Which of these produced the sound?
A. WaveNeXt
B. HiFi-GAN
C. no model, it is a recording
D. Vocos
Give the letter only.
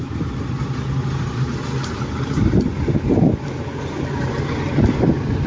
C